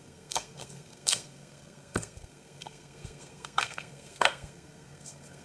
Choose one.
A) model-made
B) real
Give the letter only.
A